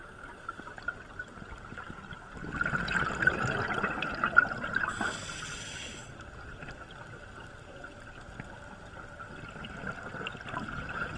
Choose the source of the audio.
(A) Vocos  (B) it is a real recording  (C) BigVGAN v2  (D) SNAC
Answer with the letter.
B